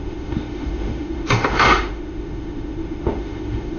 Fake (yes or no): yes